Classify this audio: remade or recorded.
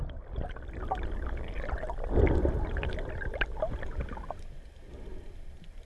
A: recorded